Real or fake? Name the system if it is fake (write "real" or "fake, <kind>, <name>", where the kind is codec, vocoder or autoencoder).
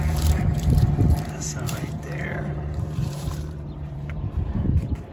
fake, vocoder, BigVGAN v2